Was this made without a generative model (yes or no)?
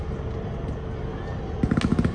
yes